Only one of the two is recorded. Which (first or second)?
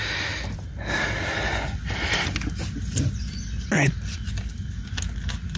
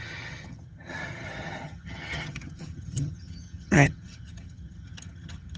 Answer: first